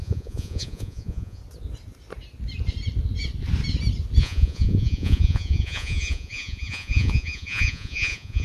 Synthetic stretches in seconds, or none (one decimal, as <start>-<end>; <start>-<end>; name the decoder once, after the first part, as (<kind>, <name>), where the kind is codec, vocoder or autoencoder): 0.0-1.4 (vocoder, Vocos); 4.2-8.4